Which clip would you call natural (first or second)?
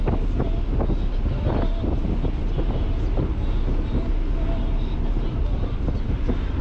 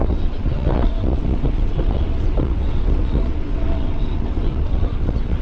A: first